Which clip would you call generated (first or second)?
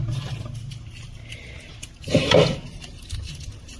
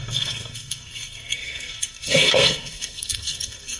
second